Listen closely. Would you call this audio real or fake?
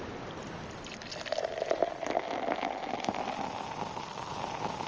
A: real